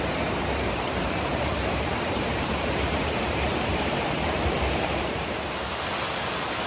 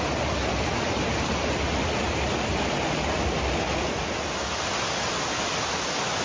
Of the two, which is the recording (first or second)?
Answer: second